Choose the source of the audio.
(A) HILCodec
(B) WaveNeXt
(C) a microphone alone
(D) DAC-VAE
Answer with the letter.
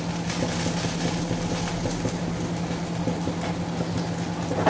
C